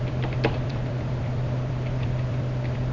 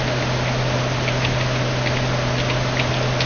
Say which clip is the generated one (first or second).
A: first